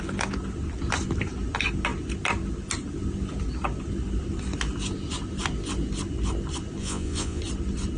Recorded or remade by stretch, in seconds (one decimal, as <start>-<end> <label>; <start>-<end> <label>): 0.0-6.8 recorded; 6.8-7.4 remade; 7.4-8.0 recorded